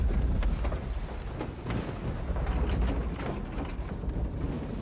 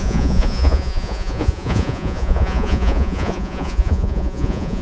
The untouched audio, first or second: first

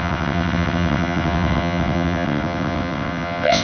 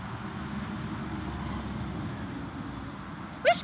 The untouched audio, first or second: second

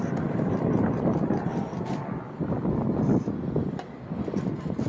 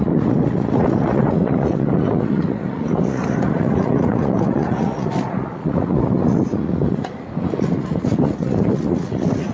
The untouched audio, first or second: first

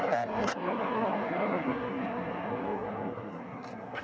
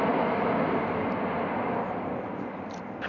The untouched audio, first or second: second